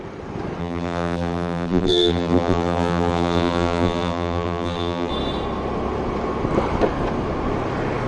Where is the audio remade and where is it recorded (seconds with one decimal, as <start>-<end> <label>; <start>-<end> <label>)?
0.0-0.6 recorded; 0.6-5.1 remade; 5.1-8.1 recorded